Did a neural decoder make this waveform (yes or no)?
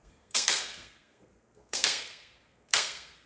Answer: yes